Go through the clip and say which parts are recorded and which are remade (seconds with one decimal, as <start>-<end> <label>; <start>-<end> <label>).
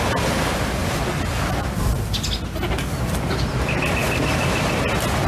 0.0-5.3 recorded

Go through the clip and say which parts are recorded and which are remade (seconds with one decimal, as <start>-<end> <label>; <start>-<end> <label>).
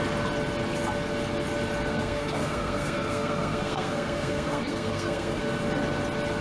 0.0-1.9 recorded; 1.9-5.4 remade; 5.4-6.4 recorded